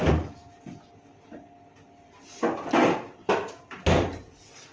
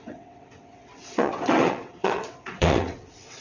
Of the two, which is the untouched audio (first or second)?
first